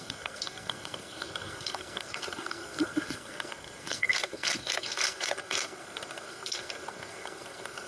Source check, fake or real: fake